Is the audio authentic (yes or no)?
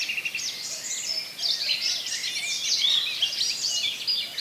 yes